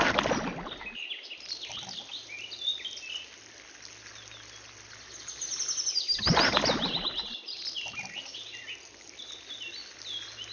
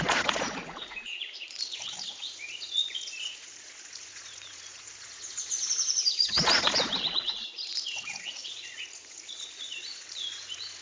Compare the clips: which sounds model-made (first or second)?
second